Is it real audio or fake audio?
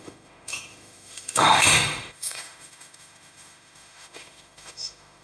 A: fake